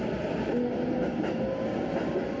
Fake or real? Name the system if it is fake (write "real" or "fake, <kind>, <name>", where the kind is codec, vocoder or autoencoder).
fake, vocoder, BigVGAN v2